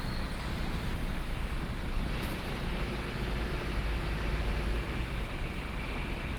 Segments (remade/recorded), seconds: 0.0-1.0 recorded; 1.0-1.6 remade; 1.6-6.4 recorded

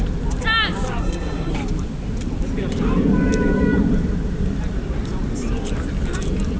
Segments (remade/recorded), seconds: 0.0-1.0 recorded; 1.0-1.5 remade; 1.5-6.6 recorded

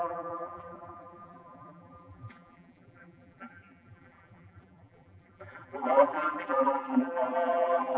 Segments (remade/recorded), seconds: 0.0-8.0 remade

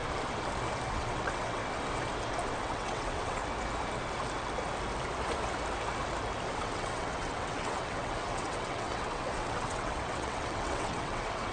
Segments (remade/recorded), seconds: 0.0-0.9 recorded; 0.9-1.6 remade; 1.6-2.6 recorded; 2.6-3.4 remade; 3.4-6.5 recorded; 6.5-11.5 remade

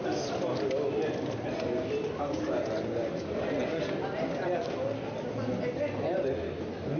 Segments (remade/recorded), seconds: 0.0-7.0 recorded